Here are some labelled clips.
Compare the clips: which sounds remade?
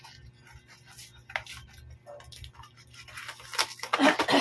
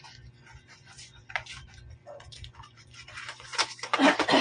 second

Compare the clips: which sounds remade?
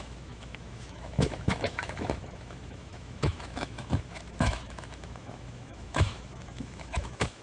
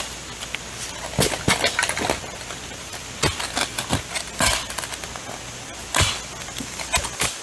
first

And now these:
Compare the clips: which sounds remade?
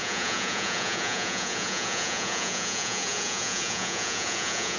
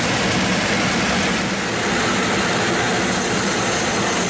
first